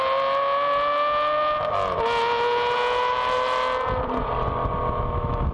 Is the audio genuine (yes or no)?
yes